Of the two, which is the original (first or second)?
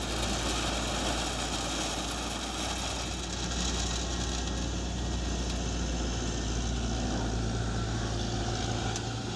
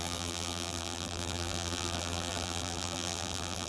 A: first